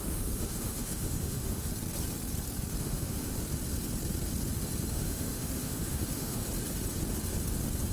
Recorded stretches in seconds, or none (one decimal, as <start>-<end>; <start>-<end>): 1.7-2.8; 3.3-4.9; 6.4-7.9